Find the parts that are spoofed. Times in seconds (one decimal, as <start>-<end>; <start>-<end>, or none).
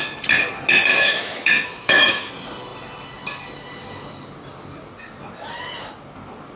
0.9-2.3